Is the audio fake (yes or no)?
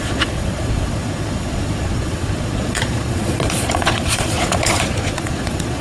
yes